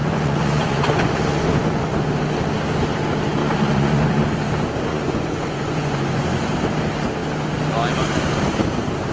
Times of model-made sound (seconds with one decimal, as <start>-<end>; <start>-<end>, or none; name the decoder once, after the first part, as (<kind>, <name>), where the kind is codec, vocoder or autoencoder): 0.0-2.1 (vocoder, Vocos); 3.4-4.4; 4.9-6.5